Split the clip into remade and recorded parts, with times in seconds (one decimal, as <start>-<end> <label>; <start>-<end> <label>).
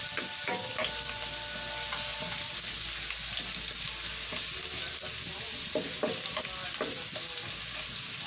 0.0-8.3 recorded